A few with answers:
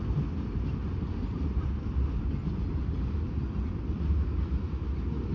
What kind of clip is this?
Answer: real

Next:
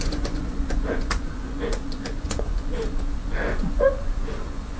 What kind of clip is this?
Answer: fake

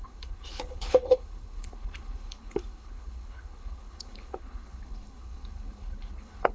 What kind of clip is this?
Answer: fake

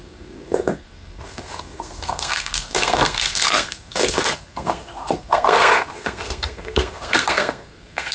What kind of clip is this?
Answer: fake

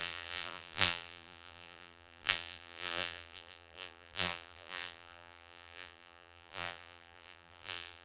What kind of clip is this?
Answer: fake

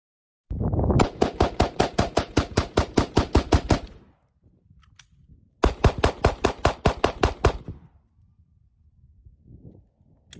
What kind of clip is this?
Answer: real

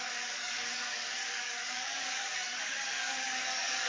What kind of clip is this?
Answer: fake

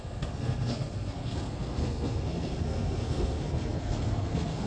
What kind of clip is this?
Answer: fake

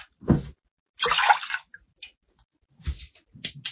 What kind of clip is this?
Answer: real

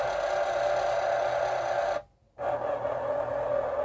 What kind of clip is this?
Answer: real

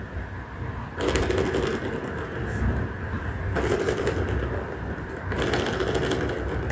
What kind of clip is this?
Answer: real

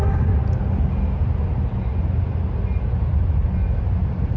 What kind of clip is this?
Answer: real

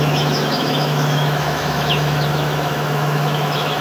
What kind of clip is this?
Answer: fake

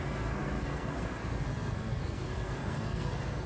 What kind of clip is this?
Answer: fake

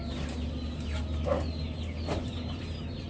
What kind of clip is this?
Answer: real